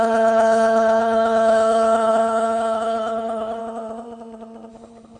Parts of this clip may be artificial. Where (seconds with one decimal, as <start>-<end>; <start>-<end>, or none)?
0.0-3.6; 4.7-5.2

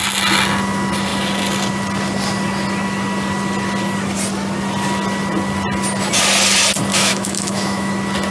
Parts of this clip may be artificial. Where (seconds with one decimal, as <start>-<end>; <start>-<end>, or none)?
6.9-7.9

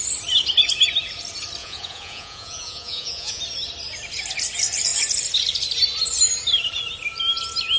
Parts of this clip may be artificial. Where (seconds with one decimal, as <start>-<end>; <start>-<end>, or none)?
1.6-3.4

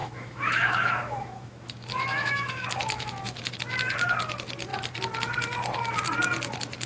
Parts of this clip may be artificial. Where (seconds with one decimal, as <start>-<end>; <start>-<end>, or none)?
0.0-3.5

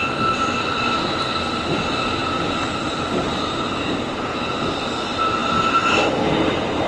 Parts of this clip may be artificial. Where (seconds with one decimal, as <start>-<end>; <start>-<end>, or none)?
0.0-2.2; 2.8-6.9

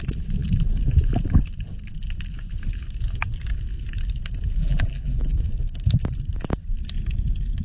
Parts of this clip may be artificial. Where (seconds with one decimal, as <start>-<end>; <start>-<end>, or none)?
4.6-5.4

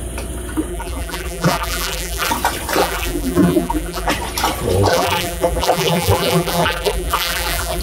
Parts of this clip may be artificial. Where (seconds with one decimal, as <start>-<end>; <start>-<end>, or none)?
0.7-2.3; 2.8-4.1; 4.9-7.8

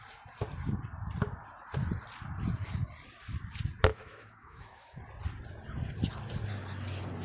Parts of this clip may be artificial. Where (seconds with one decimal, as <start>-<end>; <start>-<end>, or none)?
3.9-5.0